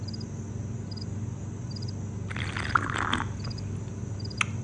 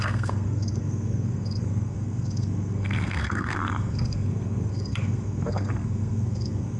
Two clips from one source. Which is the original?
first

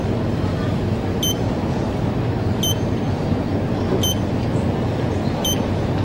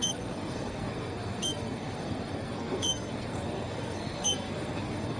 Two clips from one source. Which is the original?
first